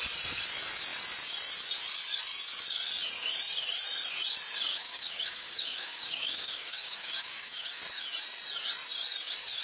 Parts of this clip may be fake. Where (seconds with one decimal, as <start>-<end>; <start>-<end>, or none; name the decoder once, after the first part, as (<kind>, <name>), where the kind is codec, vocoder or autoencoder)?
4.7-7.8 (codec, DAC)